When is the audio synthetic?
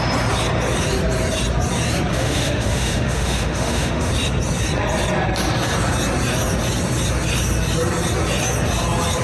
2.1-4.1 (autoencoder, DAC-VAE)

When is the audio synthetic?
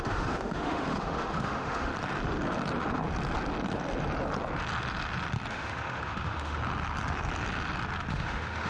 0.0-1.9 (autoencoder, DAC-VAE); 5.5-6.6; 8.1-8.7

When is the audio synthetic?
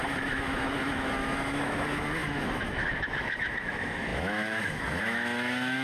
0.0-5.8 (autoencoder, DAC-VAE)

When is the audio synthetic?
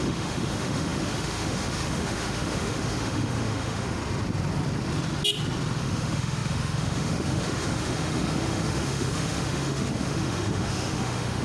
0.0-4.0 (autoencoder, DAC-VAE); 5.8-11.4